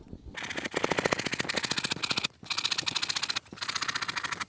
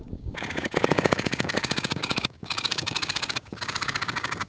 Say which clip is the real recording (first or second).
first